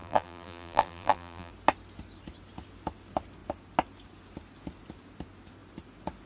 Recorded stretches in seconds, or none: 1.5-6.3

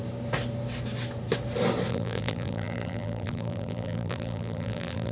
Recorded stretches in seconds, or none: 0.0-1.9

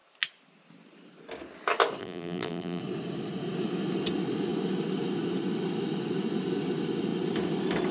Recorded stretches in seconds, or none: 0.0-2.0; 2.8-7.9

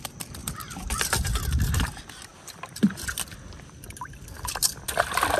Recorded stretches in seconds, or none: 0.0-0.4; 1.3-5.4

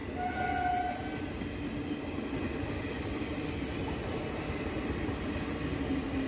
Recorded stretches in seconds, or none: 0.0-6.3

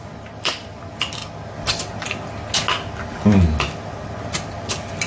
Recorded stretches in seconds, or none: 1.2-4.2

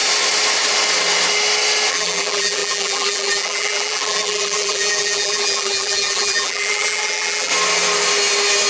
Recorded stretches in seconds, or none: 0.0-1.9; 7.5-8.7